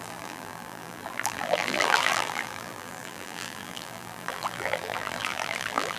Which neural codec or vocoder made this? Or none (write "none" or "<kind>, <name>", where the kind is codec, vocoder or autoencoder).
vocoder, BigVGAN v2